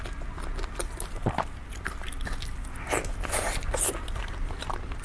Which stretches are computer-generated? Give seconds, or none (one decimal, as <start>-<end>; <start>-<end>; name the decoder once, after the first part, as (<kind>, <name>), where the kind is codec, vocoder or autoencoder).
none